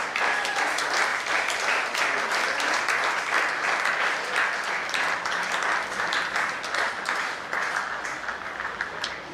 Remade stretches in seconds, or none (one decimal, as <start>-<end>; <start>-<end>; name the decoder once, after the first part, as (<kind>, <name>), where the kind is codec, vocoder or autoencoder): none